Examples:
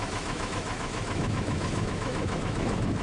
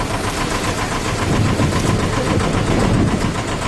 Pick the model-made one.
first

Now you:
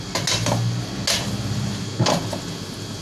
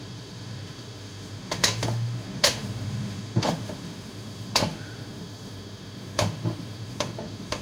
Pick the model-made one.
second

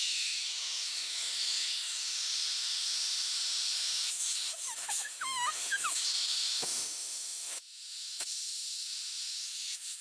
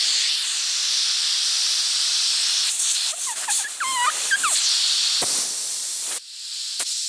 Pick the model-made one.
first